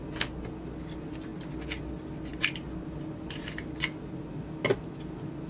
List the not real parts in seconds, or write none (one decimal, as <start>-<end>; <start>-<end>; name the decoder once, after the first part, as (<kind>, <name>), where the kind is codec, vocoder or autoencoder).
none